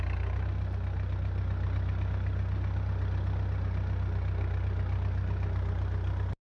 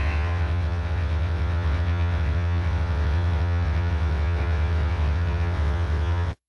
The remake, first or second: second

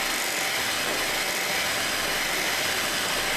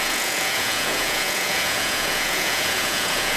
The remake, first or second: second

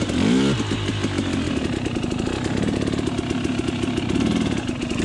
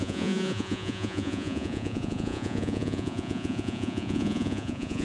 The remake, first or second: second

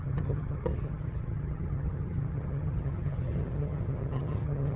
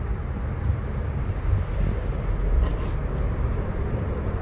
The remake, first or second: first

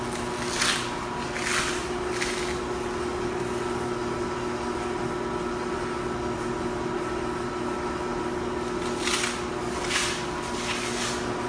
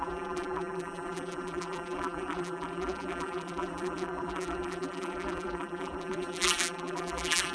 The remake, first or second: second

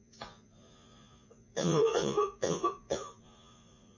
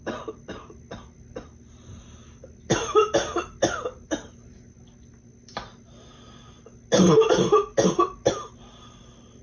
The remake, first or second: first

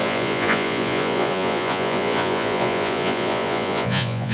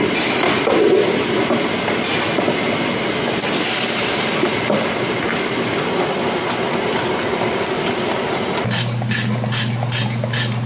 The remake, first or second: first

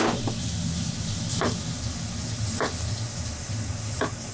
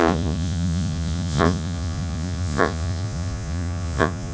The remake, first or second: second